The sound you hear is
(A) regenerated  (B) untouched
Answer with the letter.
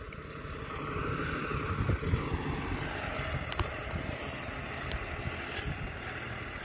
B